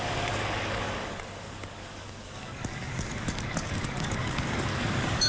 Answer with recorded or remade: remade